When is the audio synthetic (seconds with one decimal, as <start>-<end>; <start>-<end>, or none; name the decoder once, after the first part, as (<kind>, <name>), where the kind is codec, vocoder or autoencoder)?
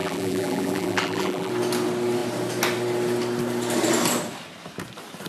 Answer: 0.0-1.5 (vocoder, BigVGAN v2)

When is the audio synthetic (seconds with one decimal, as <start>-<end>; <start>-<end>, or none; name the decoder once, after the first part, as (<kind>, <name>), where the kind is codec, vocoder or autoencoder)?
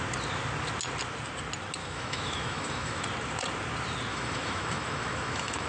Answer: 1.8-3.0 (autoencoder, DAC-VAE); 4.1-5.7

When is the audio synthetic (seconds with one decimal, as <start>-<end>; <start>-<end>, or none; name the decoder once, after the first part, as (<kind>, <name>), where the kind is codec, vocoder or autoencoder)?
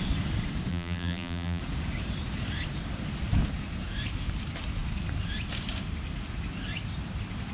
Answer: 0.7-1.6 (vocoder, BigVGAN v2)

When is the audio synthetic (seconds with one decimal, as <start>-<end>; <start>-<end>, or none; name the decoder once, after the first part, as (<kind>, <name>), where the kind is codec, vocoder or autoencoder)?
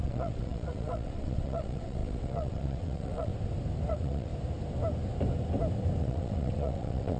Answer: 0.0-3.3 (vocoder, WaveNeXt); 3.9-4.3; 6.0-7.2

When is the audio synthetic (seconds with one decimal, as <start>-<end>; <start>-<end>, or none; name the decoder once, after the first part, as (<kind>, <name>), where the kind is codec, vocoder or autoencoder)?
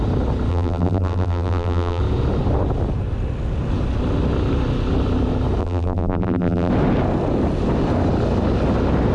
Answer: 0.5-2.0 (vocoder, BigVGAN v2); 5.6-6.7